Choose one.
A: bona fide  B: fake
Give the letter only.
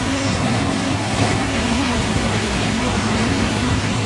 B